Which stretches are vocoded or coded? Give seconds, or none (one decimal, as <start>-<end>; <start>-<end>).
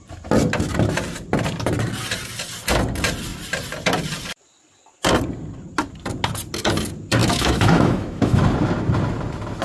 7.2-8.4